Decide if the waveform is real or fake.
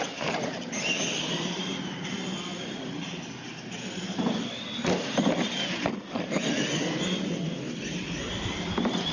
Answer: real